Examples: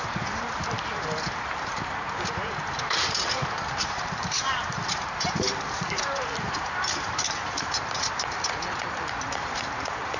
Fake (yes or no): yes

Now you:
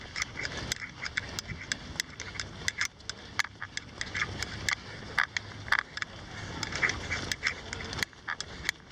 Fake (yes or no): no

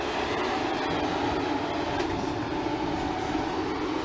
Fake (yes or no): no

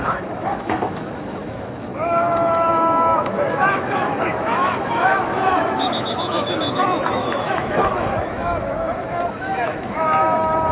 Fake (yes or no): yes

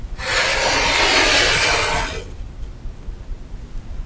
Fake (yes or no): no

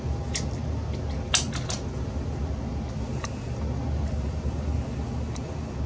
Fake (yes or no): no